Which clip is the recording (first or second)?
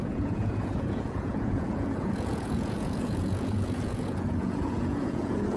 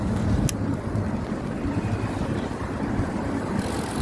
second